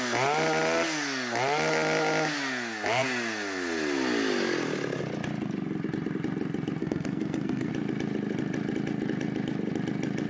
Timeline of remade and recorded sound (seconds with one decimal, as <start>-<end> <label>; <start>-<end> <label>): 0.0-6.8 recorded; 6.8-7.7 remade; 7.7-10.3 recorded